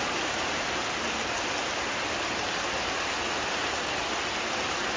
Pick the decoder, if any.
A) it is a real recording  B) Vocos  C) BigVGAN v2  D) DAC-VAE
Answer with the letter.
A